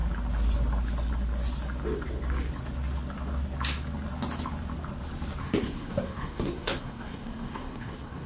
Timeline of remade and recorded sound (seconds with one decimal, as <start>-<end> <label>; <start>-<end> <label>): 0.0-5.4 recorded; 5.4-8.3 remade